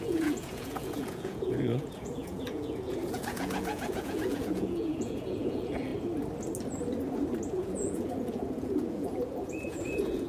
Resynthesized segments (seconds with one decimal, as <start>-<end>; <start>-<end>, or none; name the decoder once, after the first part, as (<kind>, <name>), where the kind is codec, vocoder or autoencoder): 0.0-5.9 (vocoder, Vocos); 7.5-10.3